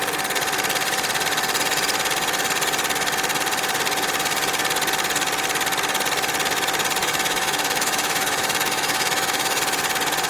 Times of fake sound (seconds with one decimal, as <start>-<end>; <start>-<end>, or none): 7.0-9.6